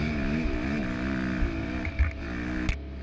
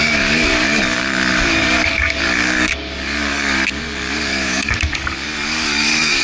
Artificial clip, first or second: second